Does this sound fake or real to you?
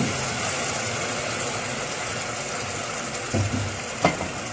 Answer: real